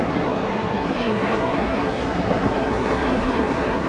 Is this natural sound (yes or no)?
no